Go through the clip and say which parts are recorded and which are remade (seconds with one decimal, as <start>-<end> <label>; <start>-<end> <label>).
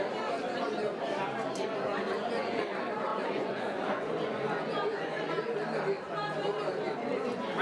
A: 0.0-2.1 recorded; 2.1-2.7 remade; 2.7-3.1 recorded; 3.1-5.4 remade; 5.4-7.6 recorded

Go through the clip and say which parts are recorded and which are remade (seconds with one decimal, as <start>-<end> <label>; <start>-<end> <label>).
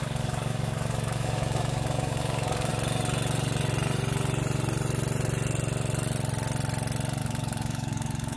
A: 0.0-2.7 remade; 2.7-7.2 recorded; 7.2-8.4 remade